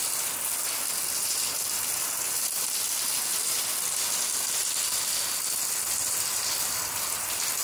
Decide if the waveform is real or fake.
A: real